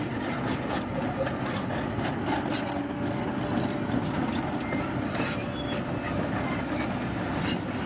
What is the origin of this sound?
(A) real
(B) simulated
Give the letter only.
A